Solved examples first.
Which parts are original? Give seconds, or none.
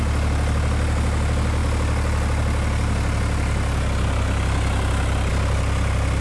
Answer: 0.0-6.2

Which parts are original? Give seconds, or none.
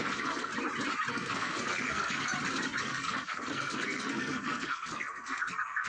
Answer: 0.5-1.1; 2.3-2.8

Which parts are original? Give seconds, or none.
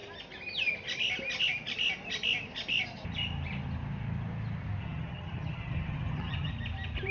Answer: 0.0-4.8; 6.5-7.1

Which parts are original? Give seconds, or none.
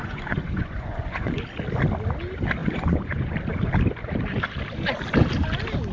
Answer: 1.4-2.6; 3.3-5.9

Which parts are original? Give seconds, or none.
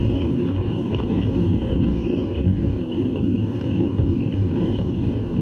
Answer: none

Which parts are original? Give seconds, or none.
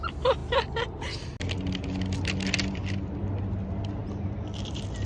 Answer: 0.0-5.1